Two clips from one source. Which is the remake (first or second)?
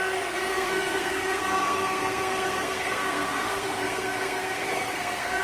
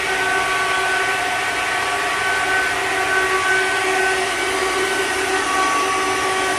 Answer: first